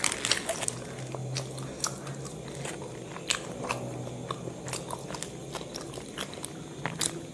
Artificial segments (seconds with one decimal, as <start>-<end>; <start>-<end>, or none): none